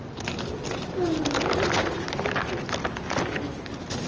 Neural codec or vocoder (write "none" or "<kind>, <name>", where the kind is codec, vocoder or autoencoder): none